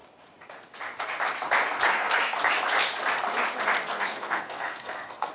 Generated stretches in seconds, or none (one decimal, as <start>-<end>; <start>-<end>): 1.9-2.4; 3.9-5.3

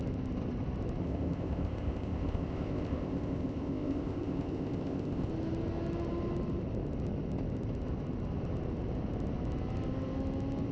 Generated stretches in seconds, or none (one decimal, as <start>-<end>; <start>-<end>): 1.0-5.3

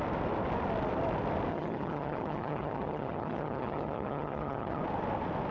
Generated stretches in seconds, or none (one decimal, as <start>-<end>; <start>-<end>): 1.5-4.8

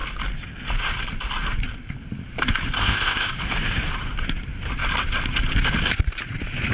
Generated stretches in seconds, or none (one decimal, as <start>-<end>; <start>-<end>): 2.8-3.3

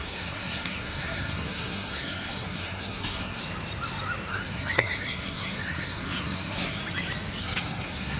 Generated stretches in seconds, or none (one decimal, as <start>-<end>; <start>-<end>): 0.0-3.4; 4.3-6.8; 7.4-8.2